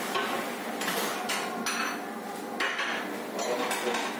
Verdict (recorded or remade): recorded